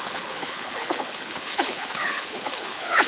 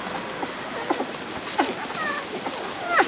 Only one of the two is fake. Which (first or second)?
first